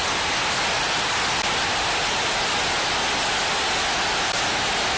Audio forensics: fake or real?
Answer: real